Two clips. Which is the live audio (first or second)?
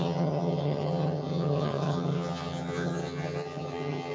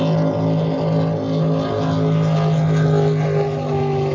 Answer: second